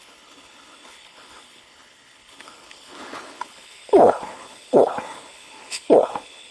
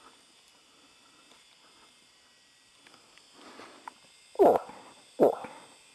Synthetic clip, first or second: first